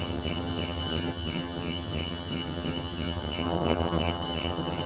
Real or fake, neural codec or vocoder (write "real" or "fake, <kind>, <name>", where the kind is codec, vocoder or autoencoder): fake, vocoder, HiFi-GAN